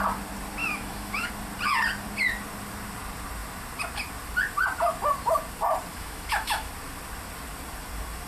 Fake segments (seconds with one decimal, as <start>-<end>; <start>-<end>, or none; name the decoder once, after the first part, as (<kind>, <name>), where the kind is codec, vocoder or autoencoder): 0.6-1.3 (autoencoder, DAC-VAE); 5.9-6.7